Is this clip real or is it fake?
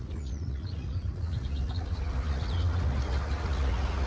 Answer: fake